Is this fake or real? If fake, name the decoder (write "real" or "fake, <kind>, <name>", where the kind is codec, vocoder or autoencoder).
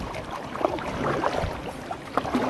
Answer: real